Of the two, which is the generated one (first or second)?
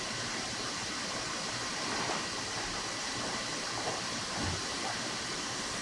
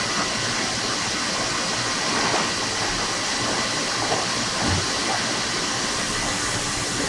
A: first